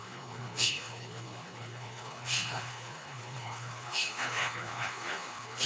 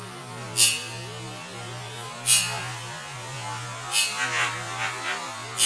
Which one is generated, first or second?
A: first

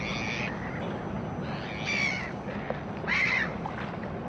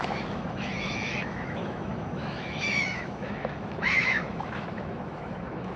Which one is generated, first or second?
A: second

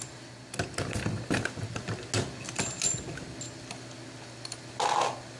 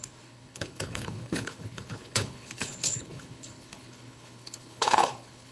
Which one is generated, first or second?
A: second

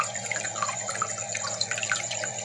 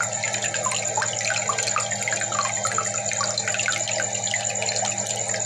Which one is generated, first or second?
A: first